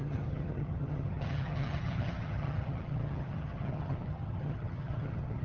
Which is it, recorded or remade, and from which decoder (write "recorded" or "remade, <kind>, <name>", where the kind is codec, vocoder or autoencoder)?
remade, vocoder, HiFi-GAN